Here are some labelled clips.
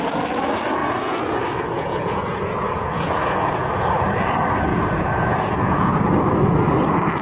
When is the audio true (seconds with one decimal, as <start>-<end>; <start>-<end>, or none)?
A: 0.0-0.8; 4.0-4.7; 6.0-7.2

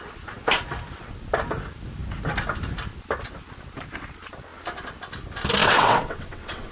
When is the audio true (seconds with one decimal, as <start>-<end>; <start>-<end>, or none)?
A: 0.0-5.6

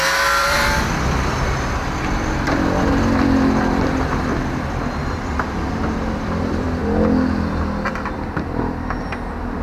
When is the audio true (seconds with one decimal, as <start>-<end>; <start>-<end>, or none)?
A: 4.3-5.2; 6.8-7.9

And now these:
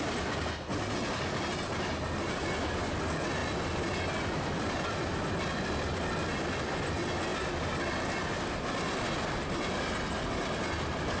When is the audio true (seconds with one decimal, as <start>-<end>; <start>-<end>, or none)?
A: 0.0-11.2